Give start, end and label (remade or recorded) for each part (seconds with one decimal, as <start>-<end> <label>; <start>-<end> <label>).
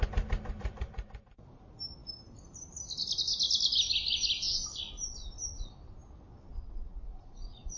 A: 0.0-0.6 recorded; 0.6-1.8 remade; 1.8-6.6 recorded; 6.6-7.8 remade